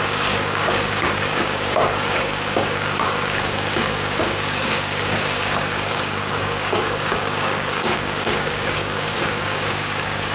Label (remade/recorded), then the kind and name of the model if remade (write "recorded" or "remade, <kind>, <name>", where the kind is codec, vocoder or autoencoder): remade, codec, DAC